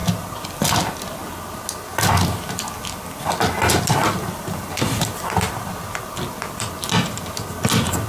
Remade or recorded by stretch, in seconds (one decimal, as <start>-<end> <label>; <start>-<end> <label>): 0.0-1.9 recorded; 1.9-5.7 remade; 5.7-8.1 recorded